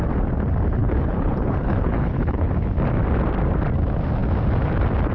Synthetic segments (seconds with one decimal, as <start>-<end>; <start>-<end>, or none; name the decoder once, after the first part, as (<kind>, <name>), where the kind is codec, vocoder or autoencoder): 0.8-2.5 (codec, HILCodec)